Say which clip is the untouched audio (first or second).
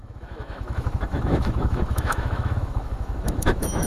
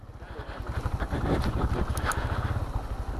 second